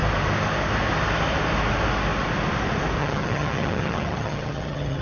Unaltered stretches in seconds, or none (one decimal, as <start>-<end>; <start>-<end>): 0.0-3.0